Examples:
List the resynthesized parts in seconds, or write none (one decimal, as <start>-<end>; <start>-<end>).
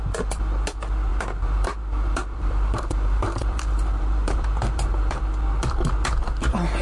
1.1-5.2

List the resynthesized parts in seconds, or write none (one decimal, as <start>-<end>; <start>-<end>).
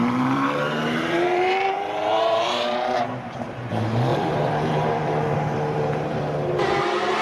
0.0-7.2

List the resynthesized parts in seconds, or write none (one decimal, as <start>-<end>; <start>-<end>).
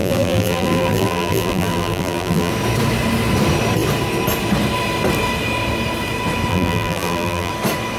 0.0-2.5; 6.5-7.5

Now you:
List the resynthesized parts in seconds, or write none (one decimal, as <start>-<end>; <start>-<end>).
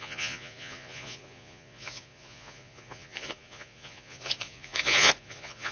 0.0-5.7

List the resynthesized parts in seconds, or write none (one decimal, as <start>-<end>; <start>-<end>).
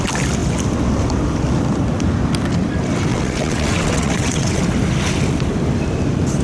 3.1-4.6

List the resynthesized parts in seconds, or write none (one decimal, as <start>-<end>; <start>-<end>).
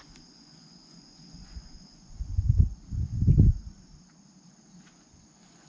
0.0-2.7; 5.0-5.7